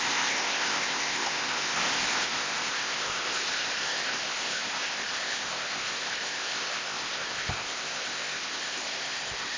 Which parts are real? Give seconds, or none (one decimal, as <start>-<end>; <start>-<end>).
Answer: none